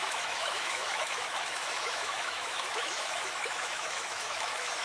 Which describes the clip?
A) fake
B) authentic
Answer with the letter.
A